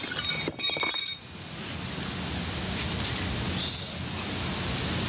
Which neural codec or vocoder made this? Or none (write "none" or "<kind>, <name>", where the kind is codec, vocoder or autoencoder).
none